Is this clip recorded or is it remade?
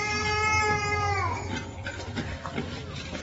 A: recorded